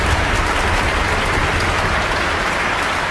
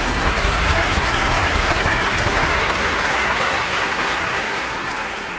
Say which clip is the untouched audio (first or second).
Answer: first